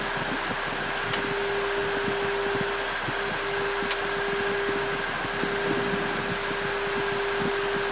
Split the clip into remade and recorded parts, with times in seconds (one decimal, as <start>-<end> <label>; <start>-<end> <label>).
0.0-7.9 recorded

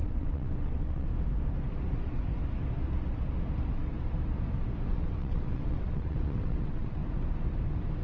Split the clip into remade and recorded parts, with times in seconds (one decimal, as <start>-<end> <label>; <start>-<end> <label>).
0.0-1.1 remade; 1.1-4.9 recorded; 4.9-7.0 remade; 7.0-8.0 recorded

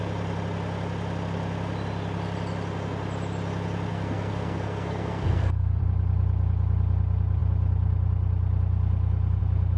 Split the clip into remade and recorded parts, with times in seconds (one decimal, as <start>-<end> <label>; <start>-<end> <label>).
0.0-3.9 recorded; 3.9-5.8 remade; 5.8-9.8 recorded

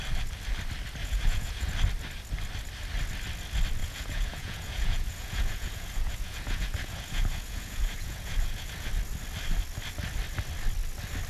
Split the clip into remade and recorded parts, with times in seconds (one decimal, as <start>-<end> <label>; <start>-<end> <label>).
0.0-1.0 recorded; 1.0-1.7 remade; 1.7-3.8 recorded; 3.8-8.9 remade; 8.9-11.3 recorded

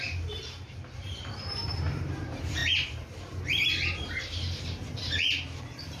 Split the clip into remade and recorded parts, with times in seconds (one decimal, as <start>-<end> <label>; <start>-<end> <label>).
0.0-6.0 remade

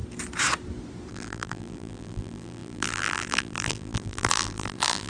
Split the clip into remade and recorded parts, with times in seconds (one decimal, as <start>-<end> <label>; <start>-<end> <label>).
0.0-1.1 recorded; 1.1-5.1 remade

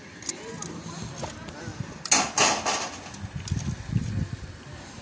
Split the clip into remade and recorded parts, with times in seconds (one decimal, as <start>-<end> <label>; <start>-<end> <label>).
0.0-5.0 recorded